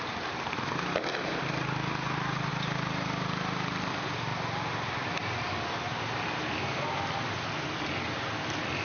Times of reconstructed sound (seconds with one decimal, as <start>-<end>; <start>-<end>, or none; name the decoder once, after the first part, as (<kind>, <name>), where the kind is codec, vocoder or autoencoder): none